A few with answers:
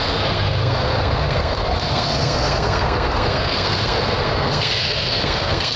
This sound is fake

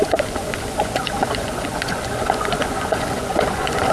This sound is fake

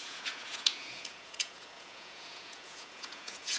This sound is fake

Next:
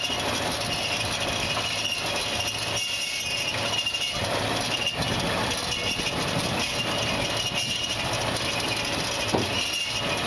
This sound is real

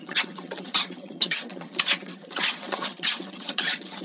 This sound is fake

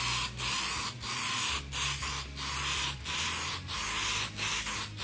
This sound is real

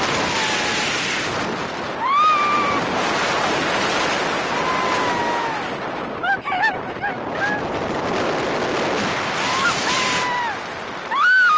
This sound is real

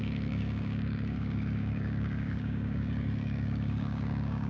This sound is fake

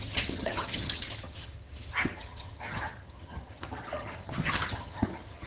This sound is fake